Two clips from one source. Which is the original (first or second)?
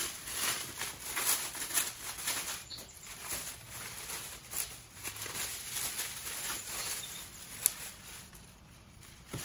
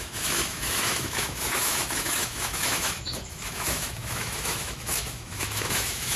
first